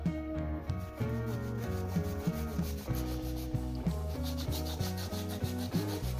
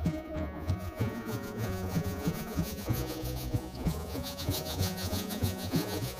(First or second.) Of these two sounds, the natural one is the first